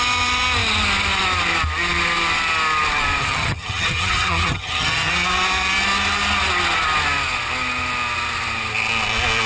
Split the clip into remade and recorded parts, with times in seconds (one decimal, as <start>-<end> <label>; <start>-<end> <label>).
0.0-3.2 recorded; 3.2-5.1 remade; 5.1-9.5 recorded